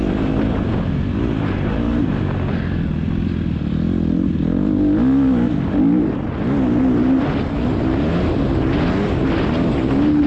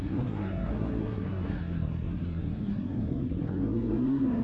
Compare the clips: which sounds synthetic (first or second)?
second